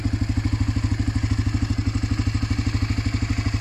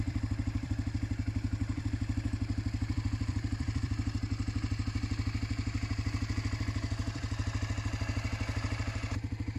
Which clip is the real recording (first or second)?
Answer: first